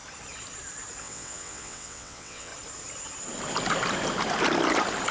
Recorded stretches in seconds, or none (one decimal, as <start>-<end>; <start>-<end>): 0.0-1.0; 2.5-5.1